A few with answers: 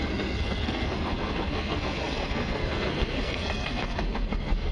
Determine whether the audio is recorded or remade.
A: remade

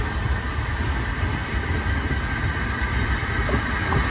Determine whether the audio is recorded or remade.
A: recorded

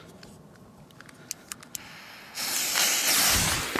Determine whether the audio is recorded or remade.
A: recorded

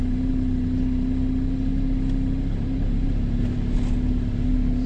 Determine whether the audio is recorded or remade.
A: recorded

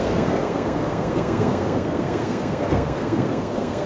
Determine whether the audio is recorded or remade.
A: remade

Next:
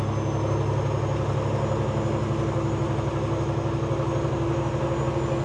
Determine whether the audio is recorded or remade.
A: recorded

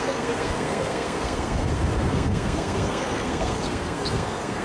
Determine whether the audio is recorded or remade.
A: remade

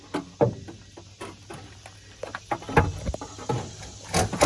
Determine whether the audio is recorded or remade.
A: recorded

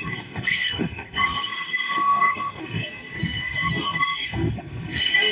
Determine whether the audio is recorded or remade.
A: remade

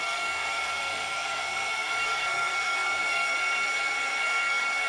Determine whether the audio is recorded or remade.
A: remade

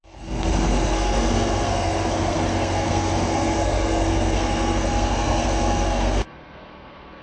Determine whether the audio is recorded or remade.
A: remade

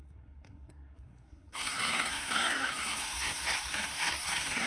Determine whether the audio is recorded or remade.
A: remade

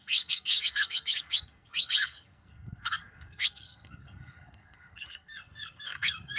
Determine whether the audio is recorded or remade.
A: remade